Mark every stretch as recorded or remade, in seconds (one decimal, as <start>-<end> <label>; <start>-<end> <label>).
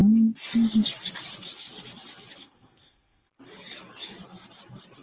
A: 0.0-2.4 recorded; 2.4-3.3 remade; 3.3-5.0 recorded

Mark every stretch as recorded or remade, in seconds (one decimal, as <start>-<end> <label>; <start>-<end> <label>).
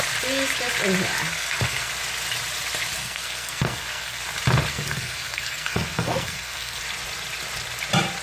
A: 0.0-1.3 recorded; 1.3-1.9 remade; 1.9-3.0 recorded; 3.0-4.2 remade; 4.2-4.7 recorded; 4.7-6.8 remade; 6.8-8.2 recorded